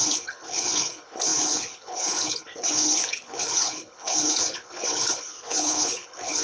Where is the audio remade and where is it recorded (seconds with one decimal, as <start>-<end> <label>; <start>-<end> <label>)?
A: 0.0-6.4 remade